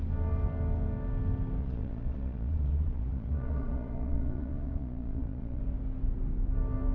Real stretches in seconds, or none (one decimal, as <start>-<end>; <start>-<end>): 0.0-1.6; 5.6-6.9

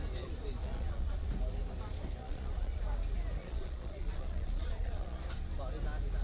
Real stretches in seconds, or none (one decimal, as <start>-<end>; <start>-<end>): 0.0-0.6; 1.3-2.2; 2.8-3.4; 5.2-6.2

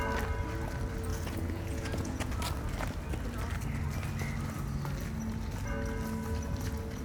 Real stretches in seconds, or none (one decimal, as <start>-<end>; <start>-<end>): 0.0-1.1; 2.3-7.0

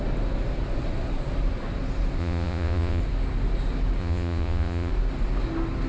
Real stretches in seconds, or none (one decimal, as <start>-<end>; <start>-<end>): 0.0-2.2; 3.0-4.0; 4.9-5.9

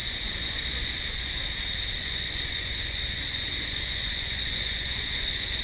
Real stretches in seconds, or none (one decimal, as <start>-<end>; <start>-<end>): 1.4-2.0